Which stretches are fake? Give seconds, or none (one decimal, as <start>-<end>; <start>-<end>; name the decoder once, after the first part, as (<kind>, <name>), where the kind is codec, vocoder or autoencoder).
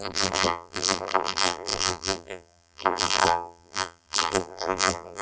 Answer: 0.0-5.2 (vocoder, BigVGAN v2)